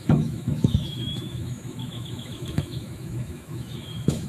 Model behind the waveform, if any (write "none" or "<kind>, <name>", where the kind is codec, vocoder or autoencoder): autoencoder, DAC-VAE